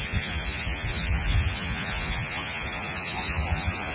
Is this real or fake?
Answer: fake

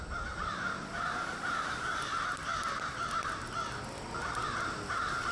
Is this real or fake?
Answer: real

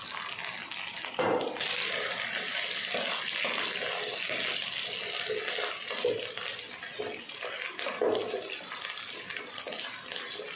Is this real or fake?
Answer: real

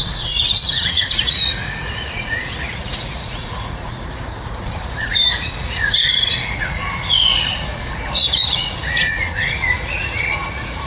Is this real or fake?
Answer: fake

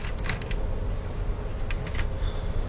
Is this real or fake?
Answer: real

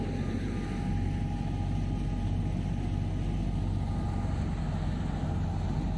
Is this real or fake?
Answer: real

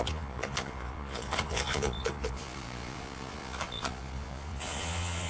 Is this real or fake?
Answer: fake